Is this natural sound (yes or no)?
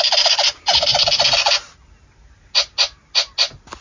yes